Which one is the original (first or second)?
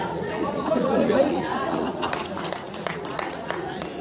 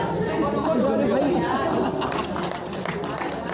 second